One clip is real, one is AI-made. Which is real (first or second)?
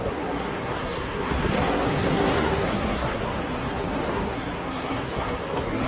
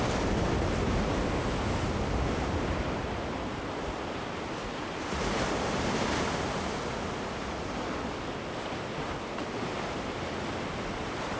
second